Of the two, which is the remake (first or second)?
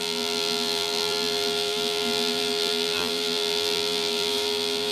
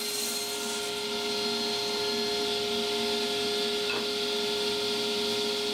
first